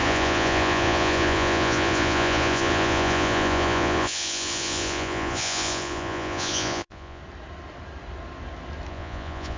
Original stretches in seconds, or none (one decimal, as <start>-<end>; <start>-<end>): 7.2-8.9